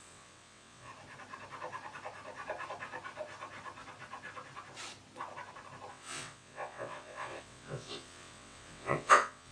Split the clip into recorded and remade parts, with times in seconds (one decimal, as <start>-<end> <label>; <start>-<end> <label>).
0.0-0.9 remade; 0.9-5.9 recorded; 5.9-9.5 remade